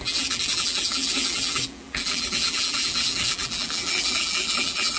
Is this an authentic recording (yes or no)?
no